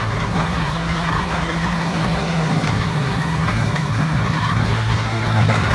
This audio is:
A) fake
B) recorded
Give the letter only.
A